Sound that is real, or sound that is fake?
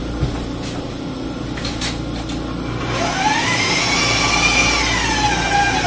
real